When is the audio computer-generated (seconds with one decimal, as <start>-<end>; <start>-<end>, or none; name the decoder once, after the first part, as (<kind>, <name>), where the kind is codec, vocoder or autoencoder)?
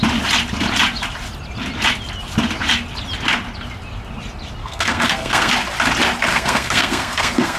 4.6-5.5 (codec, SNAC); 6.3-7.6